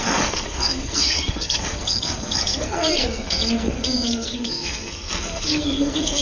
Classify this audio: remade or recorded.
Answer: remade